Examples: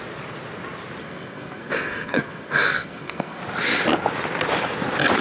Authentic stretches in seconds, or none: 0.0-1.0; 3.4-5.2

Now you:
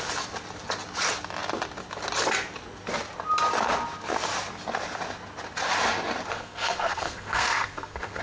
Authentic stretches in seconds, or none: 0.0-6.3